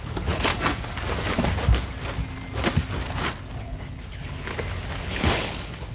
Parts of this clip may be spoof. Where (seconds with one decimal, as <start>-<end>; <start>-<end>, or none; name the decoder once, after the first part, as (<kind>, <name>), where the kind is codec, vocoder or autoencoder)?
0.0-0.5 (codec, HILCodec); 3.6-4.5; 5.0-5.9